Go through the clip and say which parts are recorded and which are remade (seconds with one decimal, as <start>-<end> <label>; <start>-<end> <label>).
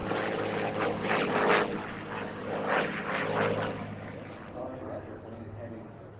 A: 0.0-6.2 recorded